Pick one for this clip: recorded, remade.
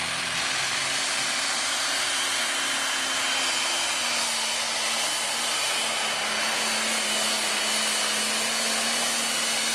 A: recorded